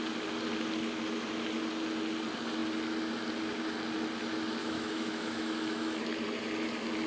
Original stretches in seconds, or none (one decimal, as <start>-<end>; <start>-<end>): 0.0-4.6; 6.0-7.1

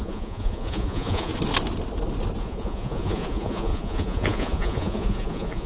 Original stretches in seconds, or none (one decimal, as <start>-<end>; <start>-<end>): 1.3-2.4

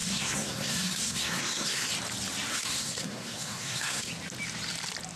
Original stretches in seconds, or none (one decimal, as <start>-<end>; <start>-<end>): 1.9-2.5; 4.1-5.2

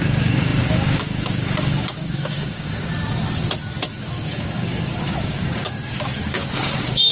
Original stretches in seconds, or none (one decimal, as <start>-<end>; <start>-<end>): 2.9-3.9

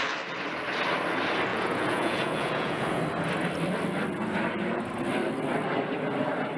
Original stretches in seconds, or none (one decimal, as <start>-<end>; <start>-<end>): 0.0-1.5; 3.0-6.6